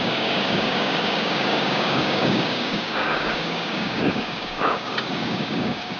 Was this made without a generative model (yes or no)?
no